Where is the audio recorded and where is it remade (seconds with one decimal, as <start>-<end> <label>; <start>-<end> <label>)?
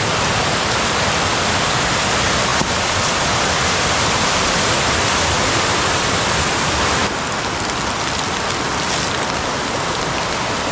0.0-2.5 recorded; 2.5-5.7 remade; 5.7-10.7 recorded